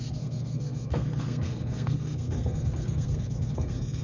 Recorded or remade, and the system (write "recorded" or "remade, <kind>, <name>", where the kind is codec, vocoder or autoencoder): remade, codec, SNAC